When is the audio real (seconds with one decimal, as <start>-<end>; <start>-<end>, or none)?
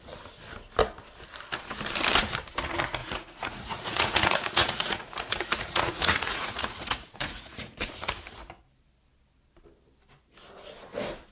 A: 0.0-3.0; 8.1-11.3